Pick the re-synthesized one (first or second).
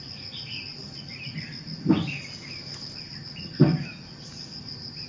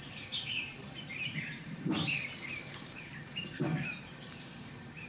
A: second